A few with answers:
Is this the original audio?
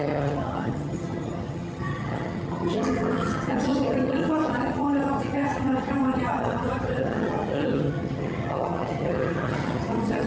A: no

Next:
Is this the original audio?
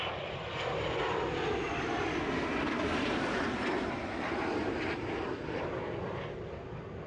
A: yes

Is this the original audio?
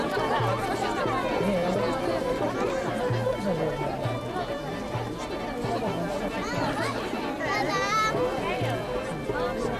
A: yes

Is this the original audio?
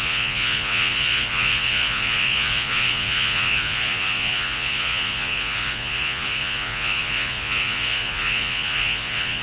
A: no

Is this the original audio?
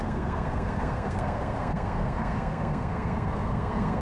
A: no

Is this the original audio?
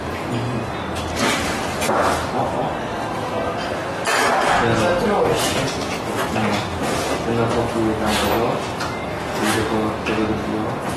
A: yes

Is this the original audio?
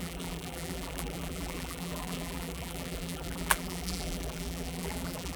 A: no